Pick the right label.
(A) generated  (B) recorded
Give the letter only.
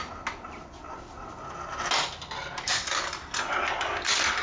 B